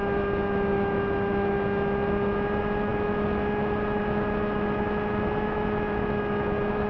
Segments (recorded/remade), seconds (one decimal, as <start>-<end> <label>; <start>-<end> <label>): 0.0-6.9 recorded